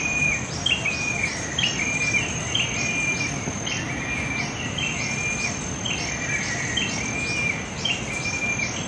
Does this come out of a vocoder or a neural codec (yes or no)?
no